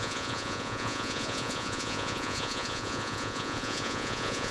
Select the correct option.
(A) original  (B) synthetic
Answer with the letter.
B